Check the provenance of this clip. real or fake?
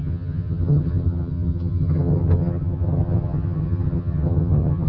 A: fake